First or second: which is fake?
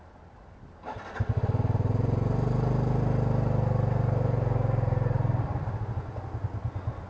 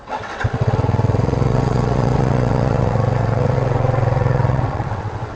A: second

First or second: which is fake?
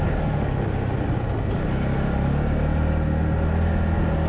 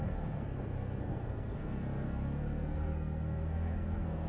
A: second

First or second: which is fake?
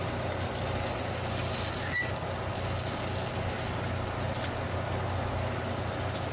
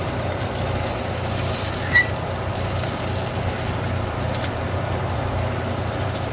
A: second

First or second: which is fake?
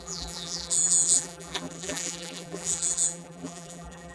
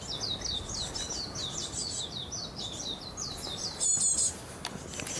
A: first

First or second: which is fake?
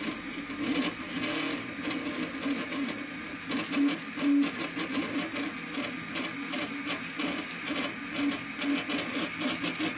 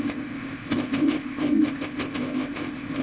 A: second